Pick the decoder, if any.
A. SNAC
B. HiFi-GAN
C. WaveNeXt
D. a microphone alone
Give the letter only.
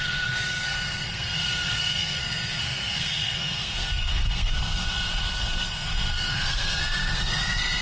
A